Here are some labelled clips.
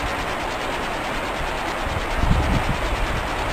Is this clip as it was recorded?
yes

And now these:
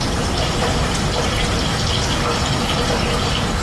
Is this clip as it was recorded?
no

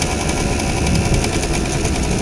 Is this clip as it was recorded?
yes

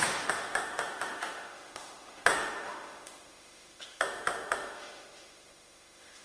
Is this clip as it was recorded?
no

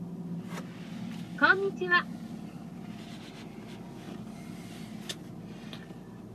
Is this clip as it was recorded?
yes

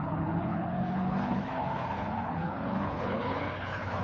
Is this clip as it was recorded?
no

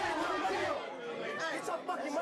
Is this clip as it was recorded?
yes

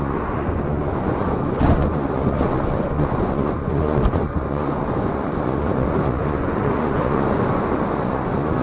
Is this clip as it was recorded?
no